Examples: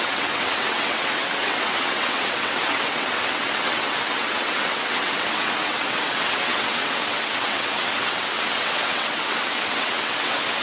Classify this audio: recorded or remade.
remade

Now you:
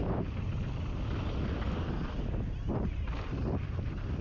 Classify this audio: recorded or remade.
recorded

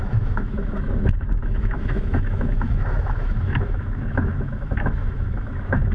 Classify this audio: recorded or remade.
remade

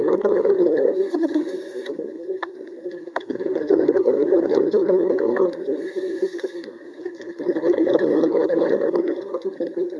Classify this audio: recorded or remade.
remade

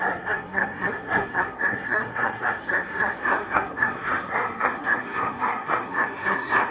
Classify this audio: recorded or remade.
remade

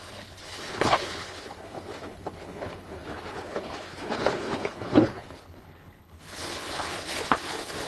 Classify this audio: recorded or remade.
remade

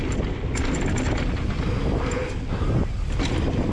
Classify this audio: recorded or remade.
recorded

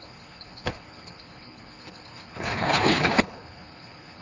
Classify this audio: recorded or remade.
remade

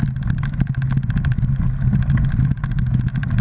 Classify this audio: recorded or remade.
recorded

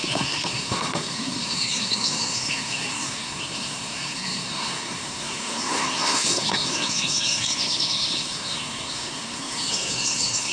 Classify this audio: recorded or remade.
remade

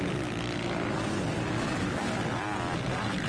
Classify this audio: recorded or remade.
recorded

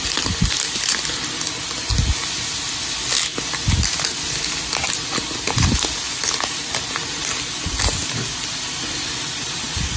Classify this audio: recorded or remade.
recorded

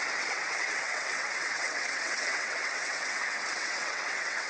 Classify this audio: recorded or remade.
remade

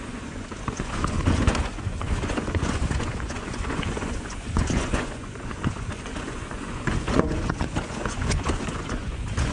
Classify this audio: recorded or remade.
remade